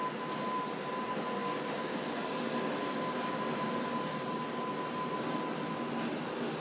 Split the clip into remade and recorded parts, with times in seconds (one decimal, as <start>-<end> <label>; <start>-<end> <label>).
0.0-6.6 recorded

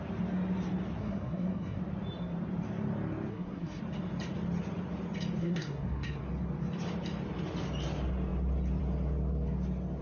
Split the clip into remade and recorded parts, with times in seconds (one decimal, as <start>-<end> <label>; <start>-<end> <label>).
0.0-1.0 recorded; 1.0-1.8 remade; 1.8-3.3 recorded; 3.3-3.8 remade; 3.8-5.4 recorded; 5.4-6.2 remade; 6.2-10.0 recorded

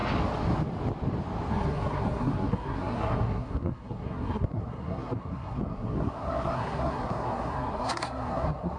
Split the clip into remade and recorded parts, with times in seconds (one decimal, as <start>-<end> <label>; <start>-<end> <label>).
0.0-1.5 recorded; 1.5-8.8 remade